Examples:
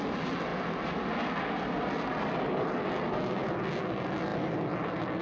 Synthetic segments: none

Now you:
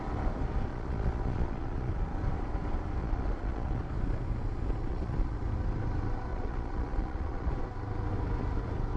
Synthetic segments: 0.7-1.9 (vocoder, Vocos); 3.0-3.8; 4.9-5.4; 6.3-7.5

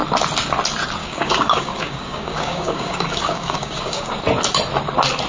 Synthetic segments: 1.0-4.2 (codec, DAC)

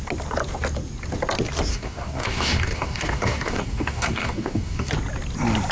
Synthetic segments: 1.7-4.9 (codec, DAC)

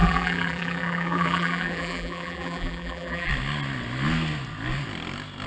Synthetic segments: 0.0-3.3 (vocoder, BigVGAN v2)